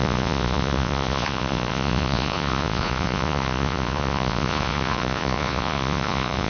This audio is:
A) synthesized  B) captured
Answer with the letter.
A